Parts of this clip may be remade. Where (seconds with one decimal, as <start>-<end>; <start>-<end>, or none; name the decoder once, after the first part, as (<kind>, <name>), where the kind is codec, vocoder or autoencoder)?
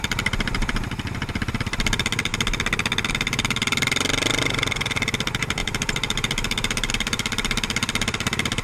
0.0-2.3 (vocoder, BigVGAN v2); 3.1-8.6